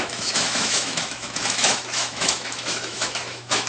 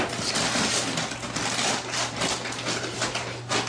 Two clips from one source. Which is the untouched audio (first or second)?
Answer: second